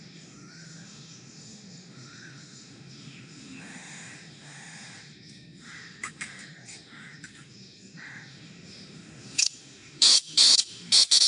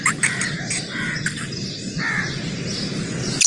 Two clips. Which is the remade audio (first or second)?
first